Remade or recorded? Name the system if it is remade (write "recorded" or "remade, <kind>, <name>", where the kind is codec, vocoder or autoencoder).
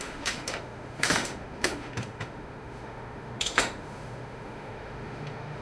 remade, autoencoder, DAC-VAE